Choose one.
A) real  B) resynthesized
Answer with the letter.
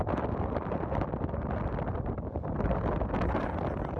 A